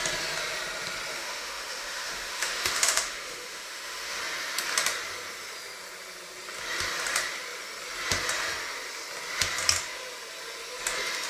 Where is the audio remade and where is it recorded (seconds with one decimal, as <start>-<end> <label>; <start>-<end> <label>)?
0.0-1.1 recorded; 1.1-4.2 remade; 4.2-11.3 recorded